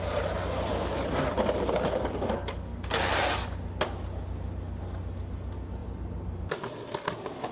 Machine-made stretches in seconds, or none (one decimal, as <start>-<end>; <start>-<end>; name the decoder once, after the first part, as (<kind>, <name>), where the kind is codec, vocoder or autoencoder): none